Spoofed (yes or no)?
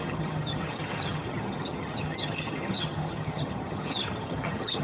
yes